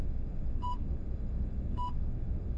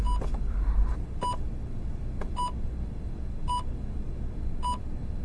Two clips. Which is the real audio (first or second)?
second